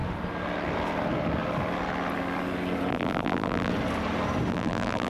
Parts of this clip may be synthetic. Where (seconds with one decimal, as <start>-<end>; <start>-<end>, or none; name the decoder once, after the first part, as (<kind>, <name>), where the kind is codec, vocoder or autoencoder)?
2.9-3.7 (vocoder, BigVGAN v2); 4.5-5.1